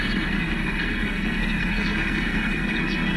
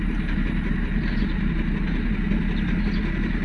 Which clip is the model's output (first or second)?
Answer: first